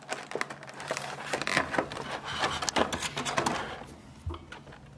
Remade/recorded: recorded